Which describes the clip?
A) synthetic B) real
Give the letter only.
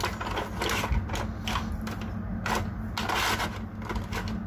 B